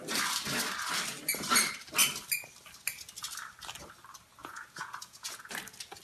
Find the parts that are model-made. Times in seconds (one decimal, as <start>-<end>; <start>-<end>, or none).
4.4-5.5